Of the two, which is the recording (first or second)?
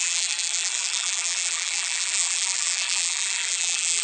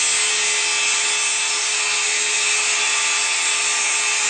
second